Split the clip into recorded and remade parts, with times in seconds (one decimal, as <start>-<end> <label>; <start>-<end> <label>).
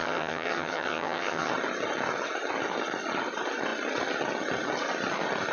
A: 0.0-1.5 remade; 1.5-5.5 recorded